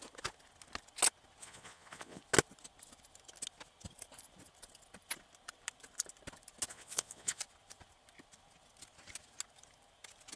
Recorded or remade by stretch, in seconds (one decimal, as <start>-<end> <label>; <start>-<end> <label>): 0.0-1.4 recorded; 1.4-2.2 remade; 2.2-6.7 recorded; 6.7-7.4 remade; 7.4-10.4 recorded